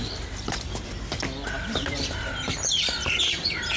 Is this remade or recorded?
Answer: recorded